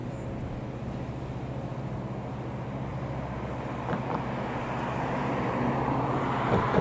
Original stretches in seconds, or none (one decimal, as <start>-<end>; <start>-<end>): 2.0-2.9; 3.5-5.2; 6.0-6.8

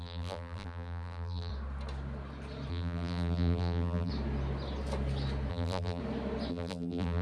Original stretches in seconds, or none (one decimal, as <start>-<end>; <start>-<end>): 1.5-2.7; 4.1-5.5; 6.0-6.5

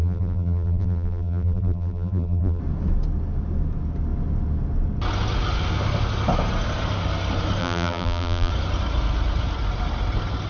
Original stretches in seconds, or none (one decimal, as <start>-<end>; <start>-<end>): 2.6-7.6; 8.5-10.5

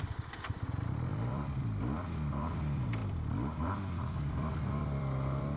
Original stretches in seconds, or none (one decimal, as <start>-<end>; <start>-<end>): none